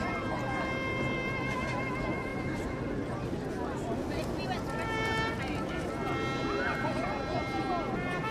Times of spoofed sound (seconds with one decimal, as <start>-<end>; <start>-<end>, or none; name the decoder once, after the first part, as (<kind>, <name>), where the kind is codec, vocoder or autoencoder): none